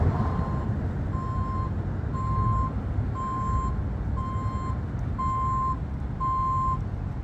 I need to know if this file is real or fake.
real